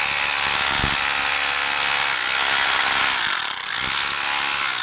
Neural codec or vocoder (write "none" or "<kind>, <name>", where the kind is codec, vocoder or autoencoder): none